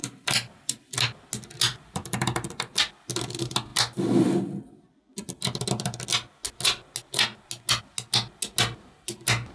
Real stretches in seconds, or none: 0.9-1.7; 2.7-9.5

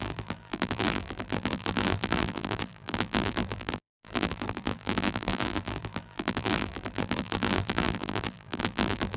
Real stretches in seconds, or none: none

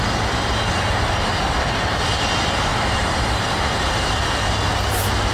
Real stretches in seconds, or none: 0.0-2.7; 4.1-5.3

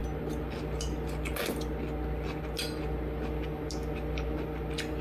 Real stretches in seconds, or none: 0.0-5.0

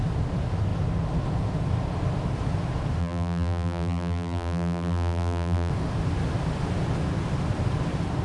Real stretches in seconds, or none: 0.0-3.0; 5.7-8.2

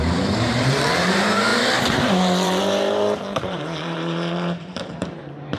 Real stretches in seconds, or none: none